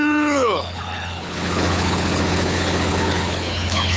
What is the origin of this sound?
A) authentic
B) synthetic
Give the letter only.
B